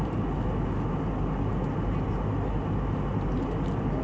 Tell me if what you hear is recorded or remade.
recorded